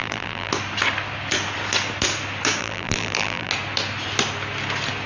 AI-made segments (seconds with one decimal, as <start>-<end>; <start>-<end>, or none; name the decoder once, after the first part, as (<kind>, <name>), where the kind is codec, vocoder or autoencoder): 0.0-0.5 (vocoder, BigVGAN v2); 2.6-3.5